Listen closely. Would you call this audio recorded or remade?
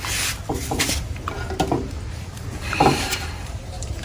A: remade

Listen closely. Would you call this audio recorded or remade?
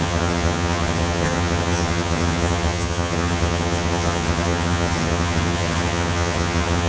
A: remade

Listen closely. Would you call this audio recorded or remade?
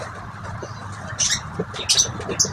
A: recorded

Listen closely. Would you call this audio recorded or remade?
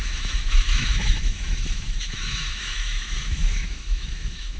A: remade